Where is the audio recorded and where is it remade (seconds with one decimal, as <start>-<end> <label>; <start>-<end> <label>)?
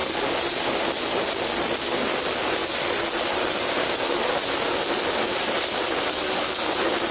0.0-7.1 recorded